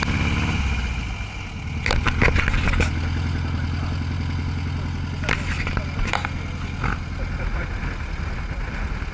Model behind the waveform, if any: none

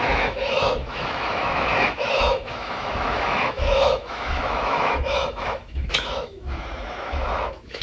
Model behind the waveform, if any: autoencoder, DAC-VAE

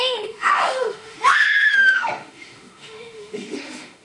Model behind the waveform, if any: autoencoder, DAC-VAE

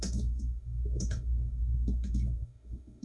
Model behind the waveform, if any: autoencoder, DAC-VAE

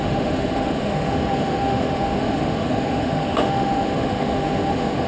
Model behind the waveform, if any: autoencoder, DAC-VAE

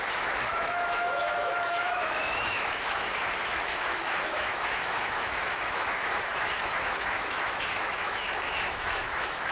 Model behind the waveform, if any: autoencoder, DAC-VAE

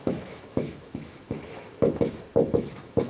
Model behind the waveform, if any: autoencoder, DAC-VAE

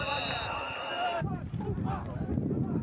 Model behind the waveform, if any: none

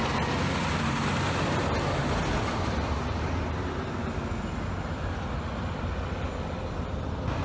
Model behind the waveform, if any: none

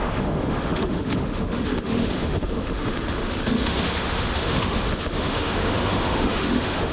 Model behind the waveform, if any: autoencoder, DAC-VAE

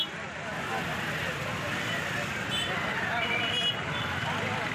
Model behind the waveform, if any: none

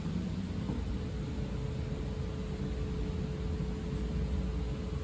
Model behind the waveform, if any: none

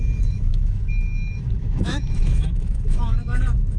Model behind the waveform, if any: autoencoder, DAC-VAE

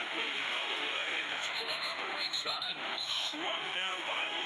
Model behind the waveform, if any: autoencoder, DAC-VAE